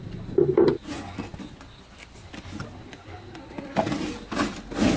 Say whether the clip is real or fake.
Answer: real